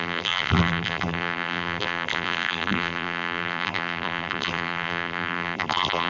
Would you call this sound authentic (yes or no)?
no